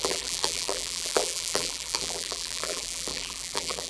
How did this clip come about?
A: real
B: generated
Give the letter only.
B